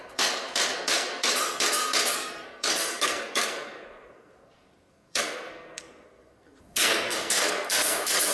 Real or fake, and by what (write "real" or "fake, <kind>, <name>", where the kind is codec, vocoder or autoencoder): fake, codec, SNAC